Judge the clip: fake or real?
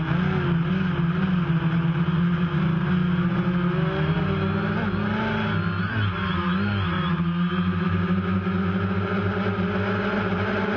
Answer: real